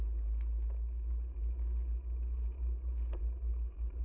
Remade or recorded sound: recorded